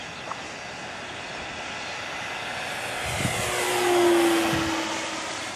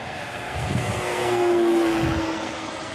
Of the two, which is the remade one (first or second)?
second